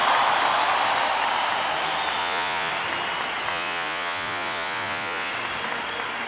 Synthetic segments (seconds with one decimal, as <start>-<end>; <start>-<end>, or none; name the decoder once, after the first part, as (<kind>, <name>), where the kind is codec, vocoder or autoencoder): 2.2-2.7 (vocoder, Vocos); 3.5-5.3

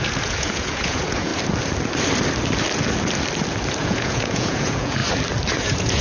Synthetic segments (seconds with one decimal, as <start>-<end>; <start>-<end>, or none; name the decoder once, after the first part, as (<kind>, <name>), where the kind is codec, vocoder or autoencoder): 0.0-1.3 (vocoder, Vocos); 3.8-5.0; 5.6-6.0

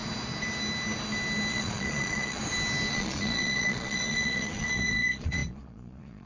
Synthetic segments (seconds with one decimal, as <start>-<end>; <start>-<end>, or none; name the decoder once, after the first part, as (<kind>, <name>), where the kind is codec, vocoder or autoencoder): 1.5-2.4 (vocoder, Vocos); 2.9-6.3

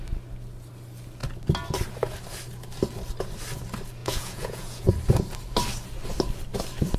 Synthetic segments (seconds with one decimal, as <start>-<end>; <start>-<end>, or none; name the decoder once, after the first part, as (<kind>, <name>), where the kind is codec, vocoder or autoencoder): 4.0-4.9 (vocoder, Vocos)